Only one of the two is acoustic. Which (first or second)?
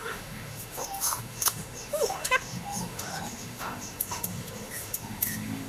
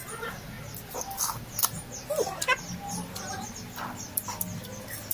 second